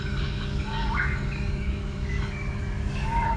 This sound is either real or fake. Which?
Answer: fake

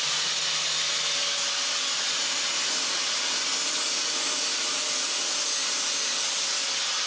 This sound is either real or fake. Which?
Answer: real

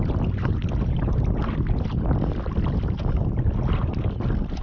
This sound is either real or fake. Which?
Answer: real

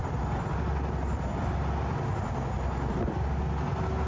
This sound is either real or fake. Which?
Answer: real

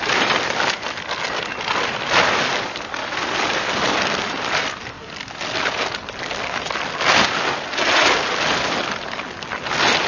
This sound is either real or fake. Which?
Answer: real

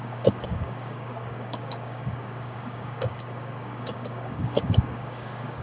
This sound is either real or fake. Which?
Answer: fake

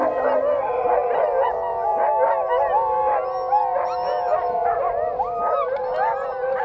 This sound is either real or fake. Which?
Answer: real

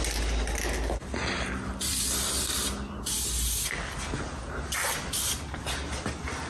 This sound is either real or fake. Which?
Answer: real